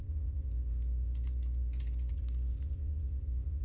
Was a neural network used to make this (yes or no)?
yes